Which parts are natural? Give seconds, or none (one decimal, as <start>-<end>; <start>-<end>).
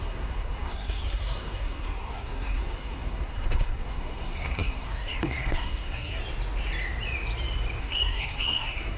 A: 6.2-7.8